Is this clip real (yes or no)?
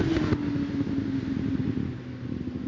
yes